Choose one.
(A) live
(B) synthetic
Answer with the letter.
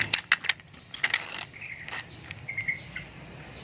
A